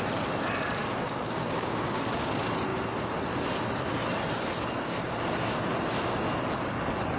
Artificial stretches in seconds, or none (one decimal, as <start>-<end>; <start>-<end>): 0.8-2.3